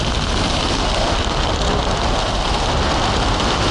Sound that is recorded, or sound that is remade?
recorded